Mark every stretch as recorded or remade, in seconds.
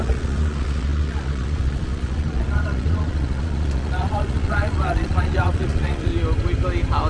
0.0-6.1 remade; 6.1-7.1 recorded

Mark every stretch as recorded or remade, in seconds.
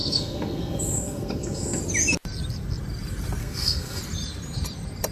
0.0-1.8 remade; 1.8-3.4 recorded; 3.4-4.0 remade; 4.0-5.1 recorded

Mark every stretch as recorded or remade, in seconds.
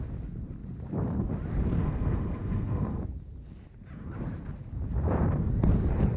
0.0-1.8 recorded; 1.8-3.0 remade; 3.0-6.2 recorded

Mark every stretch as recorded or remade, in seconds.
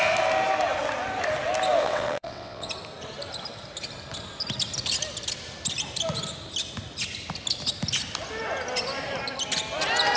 0.0-1.8 recorded; 1.8-2.7 remade; 2.7-10.2 recorded